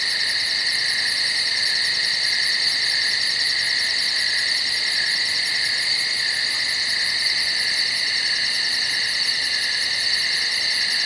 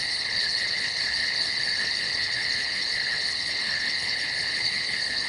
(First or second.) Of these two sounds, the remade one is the second